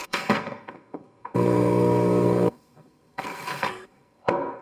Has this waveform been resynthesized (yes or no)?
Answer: yes